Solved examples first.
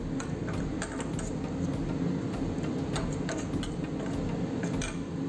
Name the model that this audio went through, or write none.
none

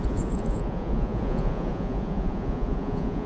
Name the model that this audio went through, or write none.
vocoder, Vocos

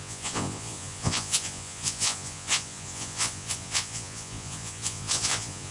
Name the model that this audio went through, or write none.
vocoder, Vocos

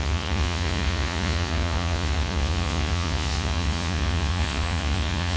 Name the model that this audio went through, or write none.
vocoder, Vocos